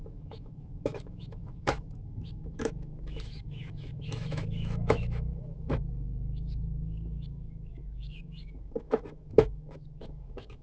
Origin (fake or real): fake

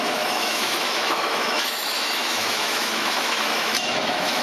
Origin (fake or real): fake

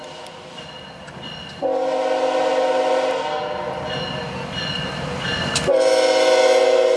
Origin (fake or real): real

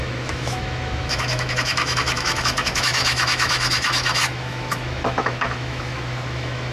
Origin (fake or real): fake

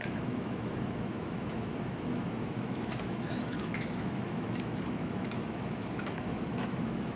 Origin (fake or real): fake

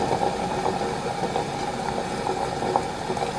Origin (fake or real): real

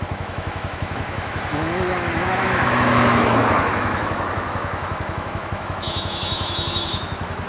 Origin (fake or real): fake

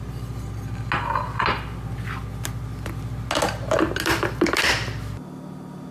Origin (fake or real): real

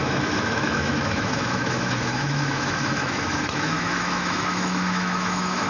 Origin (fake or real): fake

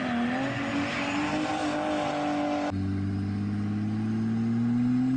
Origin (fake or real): real